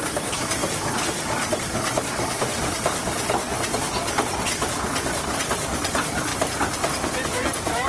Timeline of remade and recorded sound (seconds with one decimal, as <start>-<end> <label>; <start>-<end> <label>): 0.0-7.9 recorded